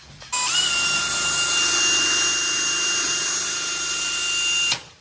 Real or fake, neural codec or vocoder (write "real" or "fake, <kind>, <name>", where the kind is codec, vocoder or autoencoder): real